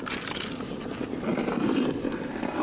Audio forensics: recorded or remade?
recorded